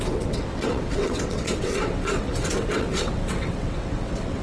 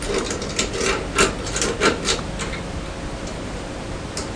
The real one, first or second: second